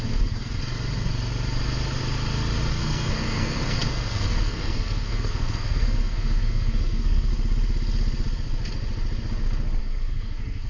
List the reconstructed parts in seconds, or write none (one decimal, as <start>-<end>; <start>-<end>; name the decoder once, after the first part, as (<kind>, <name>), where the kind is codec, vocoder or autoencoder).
0.0-0.6 (codec, SNAC); 2.7-7.3; 9.8-10.7